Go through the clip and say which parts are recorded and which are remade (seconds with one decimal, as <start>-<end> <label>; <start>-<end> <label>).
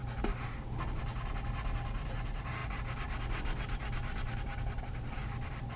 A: 0.0-5.8 recorded